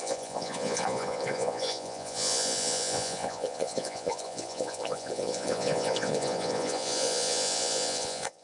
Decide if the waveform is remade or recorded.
remade